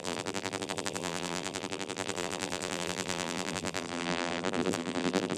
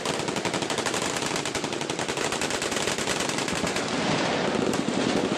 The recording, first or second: second